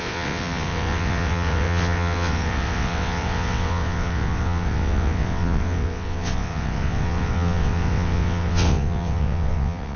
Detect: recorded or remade remade